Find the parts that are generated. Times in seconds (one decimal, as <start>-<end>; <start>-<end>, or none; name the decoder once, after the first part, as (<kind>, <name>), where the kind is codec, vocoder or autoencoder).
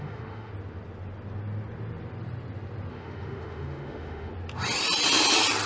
0.0-0.5 (autoencoder, DAC-VAE); 2.9-4.3